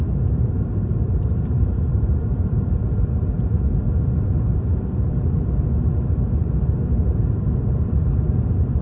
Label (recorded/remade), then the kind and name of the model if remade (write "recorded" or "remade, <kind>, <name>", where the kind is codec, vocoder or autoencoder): remade, vocoder, BigVGAN v2